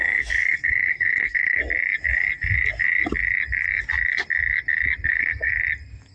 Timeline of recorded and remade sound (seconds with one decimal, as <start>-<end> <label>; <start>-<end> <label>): 0.0-1.6 remade; 1.6-5.1 recorded; 5.1-5.5 remade; 5.5-6.1 recorded